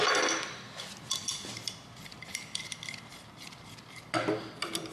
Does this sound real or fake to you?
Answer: fake